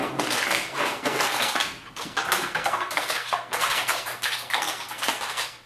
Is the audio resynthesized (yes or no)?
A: yes